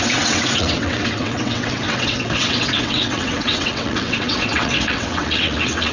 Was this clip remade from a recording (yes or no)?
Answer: yes